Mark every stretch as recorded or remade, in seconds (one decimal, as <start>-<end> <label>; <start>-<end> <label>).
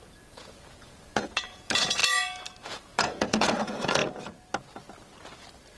0.0-2.0 remade; 2.0-2.6 recorded; 2.6-4.0 remade; 4.0-5.8 recorded